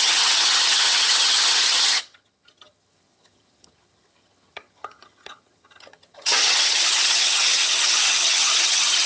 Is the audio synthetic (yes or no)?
yes